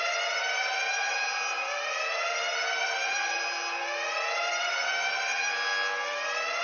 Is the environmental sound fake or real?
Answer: real